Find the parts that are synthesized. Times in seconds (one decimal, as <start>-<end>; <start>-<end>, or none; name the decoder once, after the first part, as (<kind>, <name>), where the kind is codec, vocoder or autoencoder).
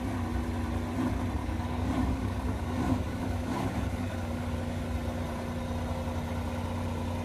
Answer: 1.4-4.8 (codec, DAC)